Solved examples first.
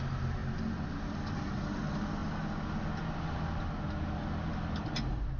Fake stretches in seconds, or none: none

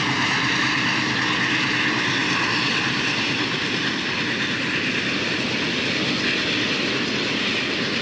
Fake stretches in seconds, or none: none

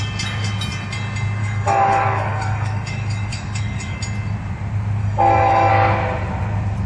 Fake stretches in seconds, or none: 1.4-4.0; 5.0-5.7

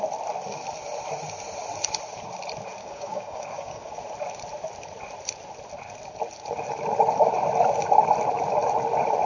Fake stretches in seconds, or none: 2.8-4.0

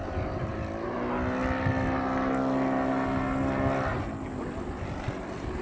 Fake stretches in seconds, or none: none

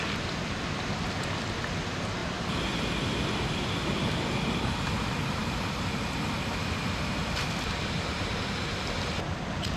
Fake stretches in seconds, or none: none

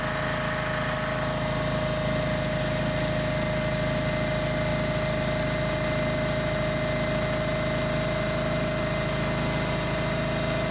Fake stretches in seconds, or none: none